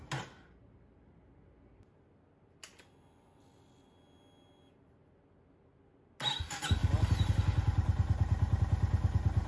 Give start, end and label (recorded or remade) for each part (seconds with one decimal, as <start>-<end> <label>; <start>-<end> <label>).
0.0-9.5 recorded

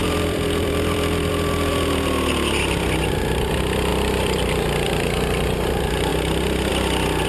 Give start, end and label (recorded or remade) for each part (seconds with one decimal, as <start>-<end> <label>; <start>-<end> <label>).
0.0-1.3 remade; 1.3-3.9 recorded; 3.9-4.9 remade; 4.9-7.3 recorded

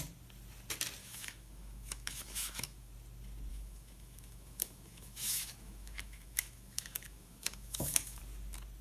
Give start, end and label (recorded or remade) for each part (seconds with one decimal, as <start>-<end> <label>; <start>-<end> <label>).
0.0-1.0 recorded; 1.0-2.9 remade; 2.9-3.5 recorded; 3.5-8.2 remade; 8.2-8.8 recorded

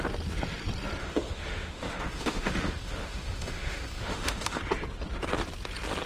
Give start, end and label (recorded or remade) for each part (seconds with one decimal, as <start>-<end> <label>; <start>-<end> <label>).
0.0-1.0 recorded; 1.0-4.6 remade; 4.6-6.1 recorded